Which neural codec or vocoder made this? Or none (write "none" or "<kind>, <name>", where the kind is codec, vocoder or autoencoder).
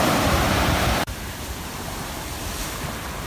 vocoder, BigVGAN v2